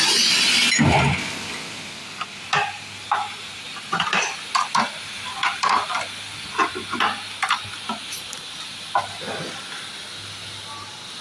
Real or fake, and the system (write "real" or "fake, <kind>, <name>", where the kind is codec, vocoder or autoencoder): real